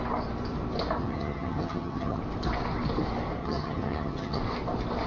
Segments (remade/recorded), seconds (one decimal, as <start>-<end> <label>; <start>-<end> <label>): 0.0-1.0 recorded; 1.0-2.2 remade; 2.2-3.4 recorded; 3.4-4.4 remade; 4.4-5.1 recorded